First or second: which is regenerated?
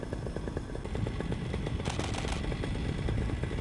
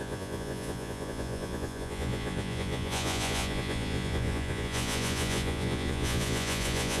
second